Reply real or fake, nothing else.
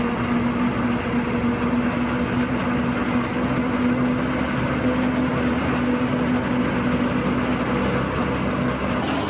real